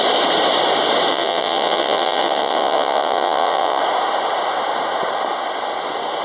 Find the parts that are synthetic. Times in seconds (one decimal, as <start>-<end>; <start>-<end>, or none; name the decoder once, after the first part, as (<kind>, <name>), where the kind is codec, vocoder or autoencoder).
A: 1.1-3.8 (vocoder, WaveNeXt)